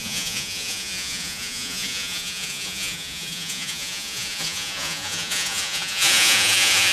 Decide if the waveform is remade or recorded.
remade